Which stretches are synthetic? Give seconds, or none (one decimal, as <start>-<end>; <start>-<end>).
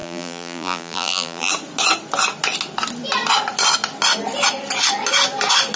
0.0-1.5